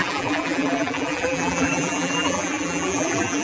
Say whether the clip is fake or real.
fake